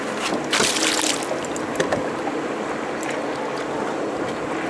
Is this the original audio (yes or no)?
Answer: yes